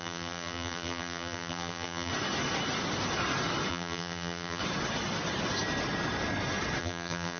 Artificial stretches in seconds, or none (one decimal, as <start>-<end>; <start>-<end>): 0.0-2.1; 3.7-4.6; 6.8-7.4